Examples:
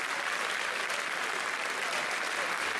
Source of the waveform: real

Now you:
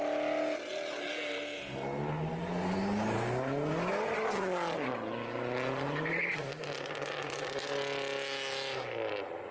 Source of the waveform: real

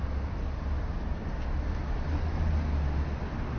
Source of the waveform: real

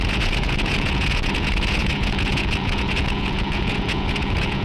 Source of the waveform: fake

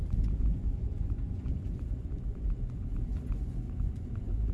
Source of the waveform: fake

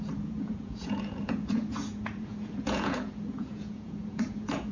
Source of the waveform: fake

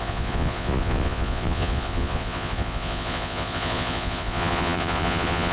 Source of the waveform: fake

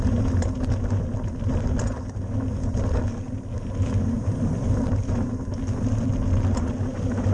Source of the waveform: real